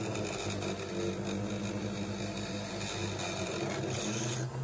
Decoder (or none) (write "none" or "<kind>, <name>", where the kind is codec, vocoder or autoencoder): none